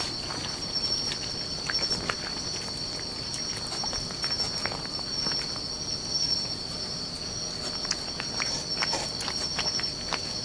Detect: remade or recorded recorded